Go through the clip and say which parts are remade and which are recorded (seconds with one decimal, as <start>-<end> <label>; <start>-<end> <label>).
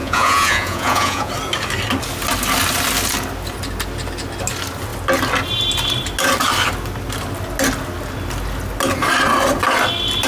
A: 0.0-1.3 remade; 1.3-10.3 recorded